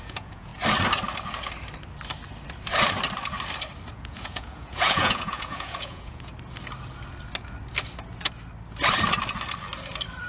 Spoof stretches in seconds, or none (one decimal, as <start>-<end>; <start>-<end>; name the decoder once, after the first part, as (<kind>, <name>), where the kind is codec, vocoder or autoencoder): 0.0-0.5 (vocoder, Vocos); 3.9-6.3